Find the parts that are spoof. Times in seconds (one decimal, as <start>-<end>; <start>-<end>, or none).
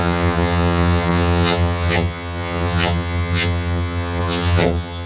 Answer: 0.0-5.1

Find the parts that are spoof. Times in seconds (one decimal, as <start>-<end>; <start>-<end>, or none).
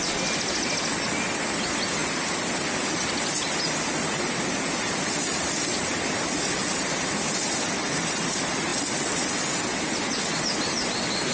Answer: none